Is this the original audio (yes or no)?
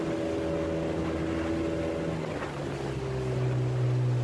yes